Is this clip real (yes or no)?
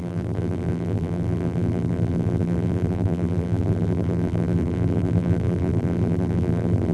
no